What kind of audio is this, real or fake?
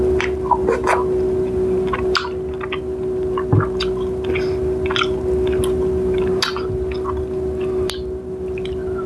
real